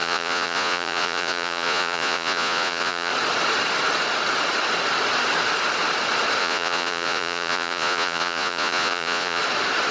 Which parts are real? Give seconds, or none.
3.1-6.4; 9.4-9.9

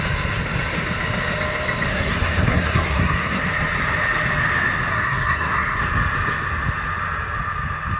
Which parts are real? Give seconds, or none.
0.0-1.9; 3.4-4.9; 5.8-8.0